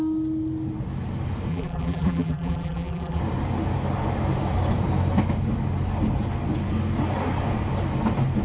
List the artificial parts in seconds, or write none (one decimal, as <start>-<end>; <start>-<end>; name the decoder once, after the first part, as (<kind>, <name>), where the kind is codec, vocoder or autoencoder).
1.5-3.2 (vocoder, BigVGAN v2)